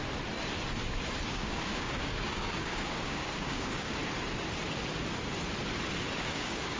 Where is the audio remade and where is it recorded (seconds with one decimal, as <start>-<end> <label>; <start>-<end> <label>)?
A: 0.0-1.3 recorded; 1.3-4.0 remade; 4.0-6.2 recorded; 6.2-6.8 remade